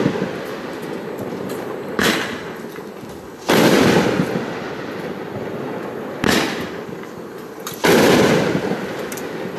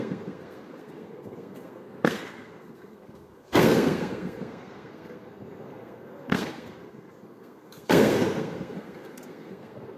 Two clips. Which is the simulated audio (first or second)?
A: second